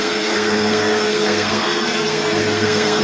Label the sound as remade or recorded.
remade